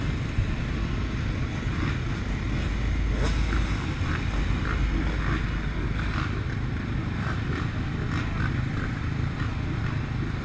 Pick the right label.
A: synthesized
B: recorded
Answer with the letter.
B